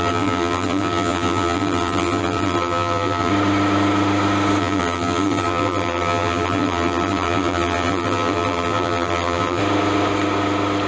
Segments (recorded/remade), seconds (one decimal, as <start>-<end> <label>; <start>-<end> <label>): 0.0-3.3 remade; 3.3-4.6 recorded; 4.6-9.6 remade; 9.6-10.9 recorded